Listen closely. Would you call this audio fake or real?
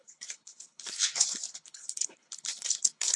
fake